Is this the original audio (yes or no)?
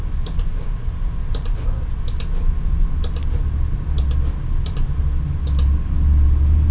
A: yes